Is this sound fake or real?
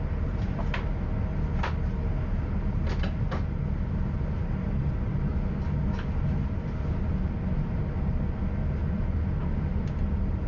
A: real